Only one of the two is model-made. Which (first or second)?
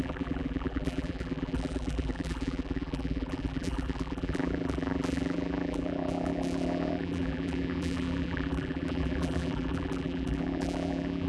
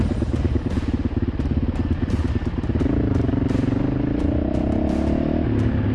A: first